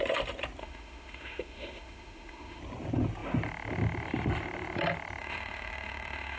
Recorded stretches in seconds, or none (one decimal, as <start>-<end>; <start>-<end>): 0.0-0.6; 2.6-5.2